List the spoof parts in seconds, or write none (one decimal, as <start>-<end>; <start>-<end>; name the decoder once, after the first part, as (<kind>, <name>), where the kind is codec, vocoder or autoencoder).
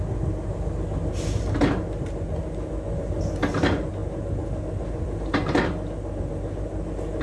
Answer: none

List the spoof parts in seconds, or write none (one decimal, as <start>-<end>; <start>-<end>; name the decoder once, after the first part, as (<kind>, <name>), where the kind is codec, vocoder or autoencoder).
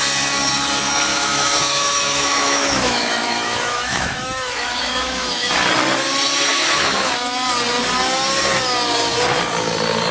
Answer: 1.1-5.5 (autoencoder, DAC-VAE); 6.5-7.1